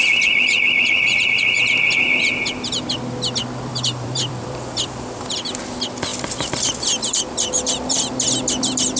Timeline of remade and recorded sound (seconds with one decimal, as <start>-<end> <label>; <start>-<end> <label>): 0.0-3.7 recorded; 3.7-5.3 remade; 5.3-6.1 recorded; 6.1-8.1 remade; 8.1-9.0 recorded